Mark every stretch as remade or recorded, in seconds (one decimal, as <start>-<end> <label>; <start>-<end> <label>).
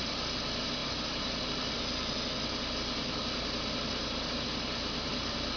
0.0-0.8 recorded; 0.8-1.8 remade; 1.8-3.2 recorded; 3.2-5.1 remade; 5.1-5.6 recorded